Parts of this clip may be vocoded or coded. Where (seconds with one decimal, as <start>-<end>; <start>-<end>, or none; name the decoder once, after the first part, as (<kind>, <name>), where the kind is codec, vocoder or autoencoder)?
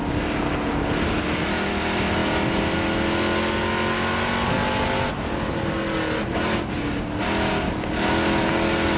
none